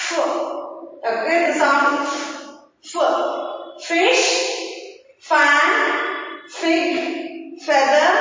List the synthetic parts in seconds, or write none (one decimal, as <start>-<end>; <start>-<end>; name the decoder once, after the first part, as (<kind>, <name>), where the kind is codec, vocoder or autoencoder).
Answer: 1.2-2.0 (vocoder, Vocos)